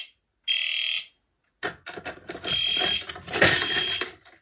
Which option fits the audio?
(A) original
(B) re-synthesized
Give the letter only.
A